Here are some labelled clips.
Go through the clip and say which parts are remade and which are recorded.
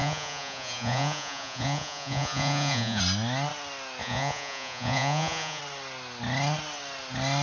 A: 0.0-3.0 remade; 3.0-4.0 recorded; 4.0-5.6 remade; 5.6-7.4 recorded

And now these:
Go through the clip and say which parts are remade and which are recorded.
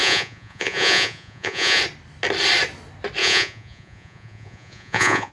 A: 0.0-1.8 remade; 1.8-3.2 recorded; 3.2-5.3 remade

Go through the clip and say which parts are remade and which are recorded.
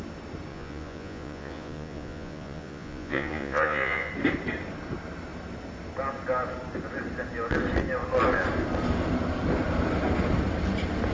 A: 0.0-0.5 recorded; 0.5-4.1 remade; 4.1-11.1 recorded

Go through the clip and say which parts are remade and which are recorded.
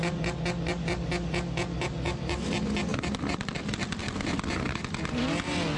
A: 0.0-5.8 recorded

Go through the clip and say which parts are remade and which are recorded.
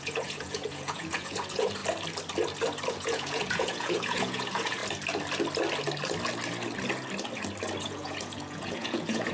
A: 0.0-1.8 remade; 1.8-2.9 recorded; 2.9-4.8 remade; 4.8-7.8 recorded; 7.8-9.3 remade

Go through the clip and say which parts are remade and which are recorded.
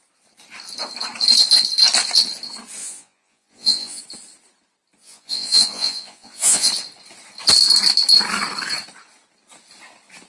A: 0.0-2.8 recorded; 2.8-4.0 remade; 4.0-5.0 recorded; 5.0-6.7 remade; 6.7-10.3 recorded